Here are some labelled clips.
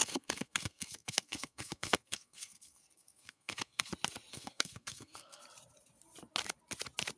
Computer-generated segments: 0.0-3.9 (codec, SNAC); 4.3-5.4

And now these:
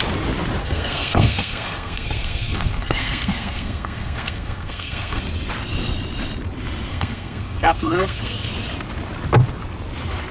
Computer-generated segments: 0.6-5.2 (codec, SNAC); 6.9-8.5

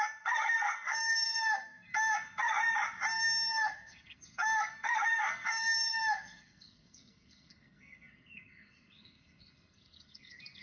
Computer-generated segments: 0.0-2.6 (codec, SNAC); 3.5-10.6

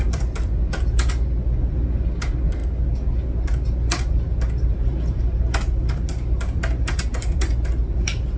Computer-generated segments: none